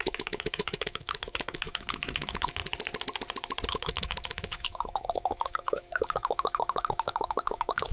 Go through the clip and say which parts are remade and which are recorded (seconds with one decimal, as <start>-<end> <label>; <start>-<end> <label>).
0.0-2.6 remade; 2.6-3.7 recorded; 3.7-7.9 remade